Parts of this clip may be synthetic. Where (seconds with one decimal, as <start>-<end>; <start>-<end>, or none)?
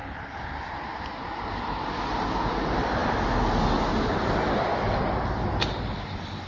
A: 0.0-2.6